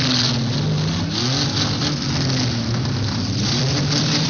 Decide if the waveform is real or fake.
real